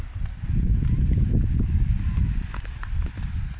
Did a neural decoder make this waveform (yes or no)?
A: no